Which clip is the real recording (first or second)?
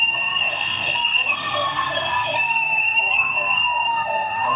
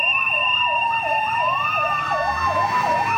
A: second